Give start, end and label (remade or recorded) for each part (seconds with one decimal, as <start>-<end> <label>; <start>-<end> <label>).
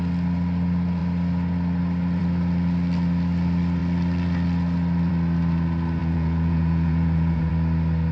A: 0.0-6.0 recorded; 6.0-7.5 remade; 7.5-8.1 recorded